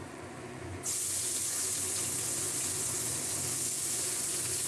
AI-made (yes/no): yes